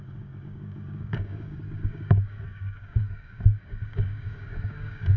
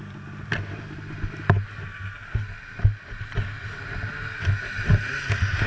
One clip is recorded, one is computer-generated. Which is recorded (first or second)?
second